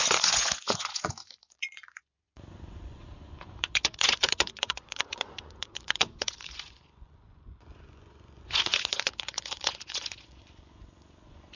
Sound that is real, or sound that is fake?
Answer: fake